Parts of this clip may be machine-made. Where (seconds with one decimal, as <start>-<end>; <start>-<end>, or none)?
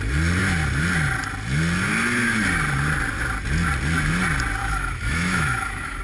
4.6-6.0